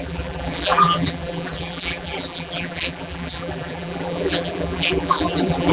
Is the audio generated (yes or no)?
yes